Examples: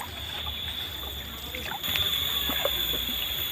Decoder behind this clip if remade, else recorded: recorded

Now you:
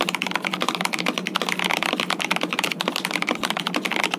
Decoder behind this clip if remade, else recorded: recorded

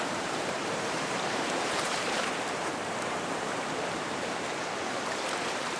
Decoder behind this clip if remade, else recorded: remade, vocoder, BigVGAN v2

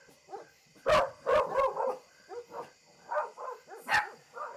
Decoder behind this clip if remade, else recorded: recorded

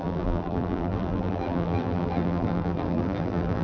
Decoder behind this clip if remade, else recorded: remade, vocoder, BigVGAN v2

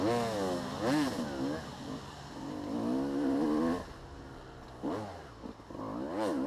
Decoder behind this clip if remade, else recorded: recorded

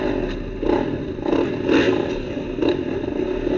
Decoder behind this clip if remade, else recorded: recorded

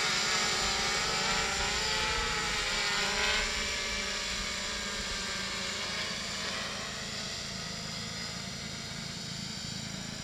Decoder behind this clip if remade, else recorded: recorded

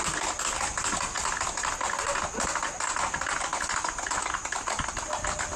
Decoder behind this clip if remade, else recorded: recorded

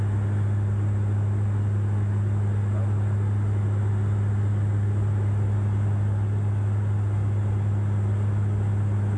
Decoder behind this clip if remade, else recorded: recorded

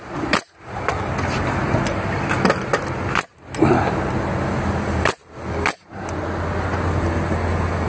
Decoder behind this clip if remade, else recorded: recorded